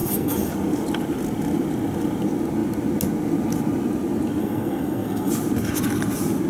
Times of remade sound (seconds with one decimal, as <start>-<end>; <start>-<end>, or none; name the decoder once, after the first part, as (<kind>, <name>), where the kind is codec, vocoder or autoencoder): 0.0-0.5 (codec, SNAC); 4.4-5.3